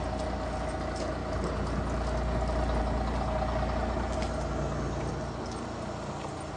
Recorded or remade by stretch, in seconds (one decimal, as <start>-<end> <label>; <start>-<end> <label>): 0.0-6.6 recorded

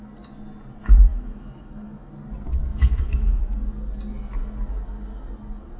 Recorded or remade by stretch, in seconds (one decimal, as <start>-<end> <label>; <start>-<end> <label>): 0.0-1.1 recorded; 1.1-2.1 remade; 2.1-2.7 recorded; 2.7-3.4 remade; 3.4-5.8 recorded

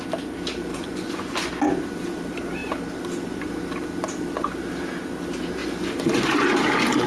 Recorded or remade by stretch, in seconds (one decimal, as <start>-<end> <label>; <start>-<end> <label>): 0.0-0.7 recorded; 0.7-1.5 remade; 1.5-5.6 recorded; 5.6-6.5 remade; 6.5-7.1 recorded

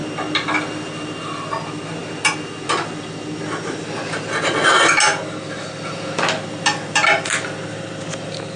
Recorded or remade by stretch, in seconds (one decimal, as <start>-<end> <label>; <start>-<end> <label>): 0.0-8.6 recorded

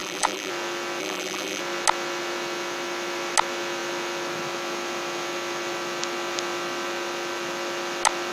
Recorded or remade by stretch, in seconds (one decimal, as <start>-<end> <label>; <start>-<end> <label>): 0.0-0.5 remade; 0.5-1.0 recorded; 1.0-1.6 remade; 1.6-8.3 recorded